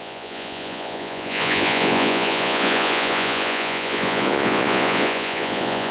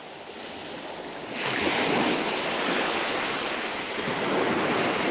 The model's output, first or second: first